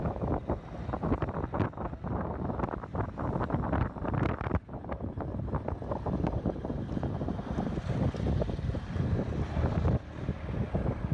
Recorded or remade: recorded